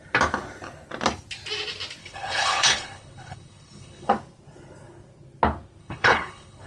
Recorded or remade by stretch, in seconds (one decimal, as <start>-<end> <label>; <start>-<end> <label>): 0.0-2.0 recorded; 2.0-4.1 remade; 4.1-5.8 recorded; 5.8-6.7 remade